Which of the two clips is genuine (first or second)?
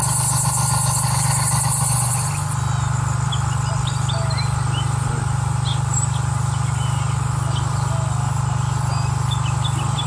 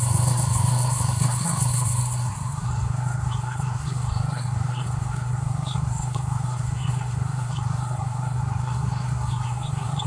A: first